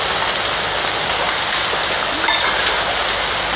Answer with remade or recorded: recorded